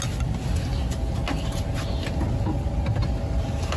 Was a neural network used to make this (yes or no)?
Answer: no